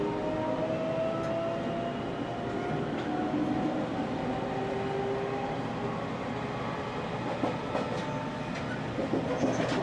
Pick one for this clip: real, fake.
real